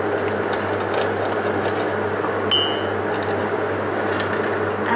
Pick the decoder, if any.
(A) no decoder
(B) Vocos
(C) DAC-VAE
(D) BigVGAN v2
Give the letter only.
A